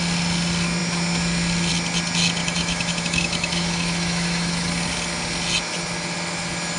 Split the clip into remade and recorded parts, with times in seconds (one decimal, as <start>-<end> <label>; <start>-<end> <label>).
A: 0.0-2.4 recorded; 2.4-4.7 remade; 4.7-6.8 recorded